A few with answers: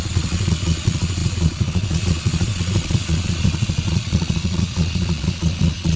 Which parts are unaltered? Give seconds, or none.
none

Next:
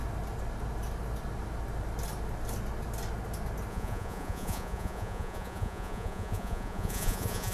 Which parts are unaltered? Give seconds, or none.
0.0-3.7

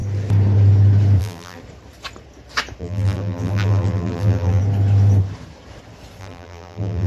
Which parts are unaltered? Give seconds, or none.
0.0-1.2; 1.6-2.8; 4.6-6.2

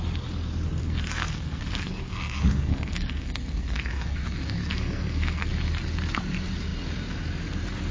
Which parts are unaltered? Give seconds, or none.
0.0-0.8; 5.5-7.9

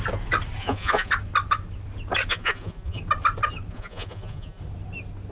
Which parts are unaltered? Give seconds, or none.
0.0-0.6; 1.1-2.3; 3.0-3.7; 4.6-5.3

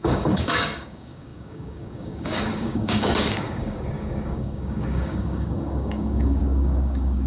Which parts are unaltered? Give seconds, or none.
none

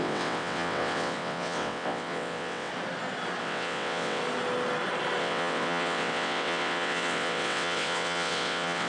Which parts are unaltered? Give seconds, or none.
2.7-3.4; 4.2-5.2